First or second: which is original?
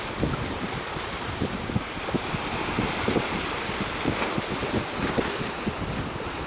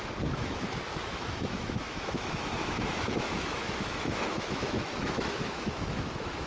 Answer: first